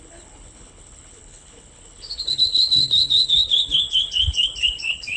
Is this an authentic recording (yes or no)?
no